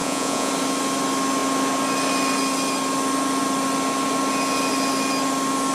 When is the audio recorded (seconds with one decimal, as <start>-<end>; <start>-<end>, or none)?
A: 0.5-5.7